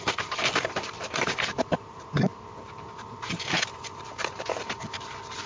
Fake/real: fake